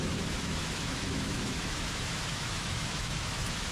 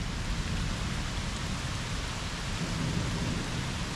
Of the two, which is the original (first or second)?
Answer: second